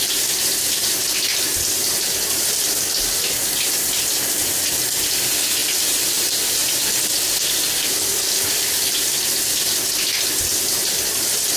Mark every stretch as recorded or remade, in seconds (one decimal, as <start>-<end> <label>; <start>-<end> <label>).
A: 0.0-11.6 recorded